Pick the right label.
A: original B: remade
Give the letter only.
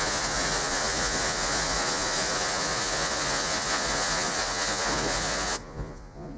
B